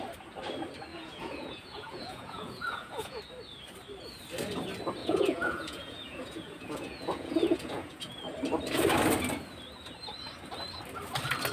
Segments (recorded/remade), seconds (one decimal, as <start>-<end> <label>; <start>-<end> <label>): 0.0-0.9 recorded; 0.9-3.2 remade; 3.2-5.0 recorded; 5.0-8.2 remade; 8.2-11.5 recorded